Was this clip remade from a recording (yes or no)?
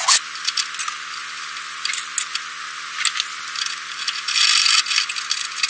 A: no